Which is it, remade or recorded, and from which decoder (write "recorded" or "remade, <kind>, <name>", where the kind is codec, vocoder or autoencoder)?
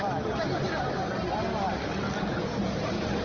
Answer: recorded